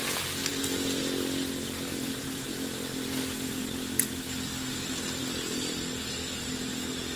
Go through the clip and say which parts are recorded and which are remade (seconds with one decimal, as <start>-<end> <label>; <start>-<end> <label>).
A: 0.0-1.9 recorded; 1.9-2.5 remade; 2.5-7.2 recorded